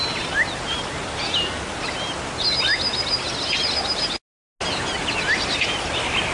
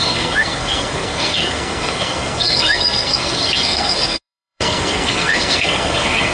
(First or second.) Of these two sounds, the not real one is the second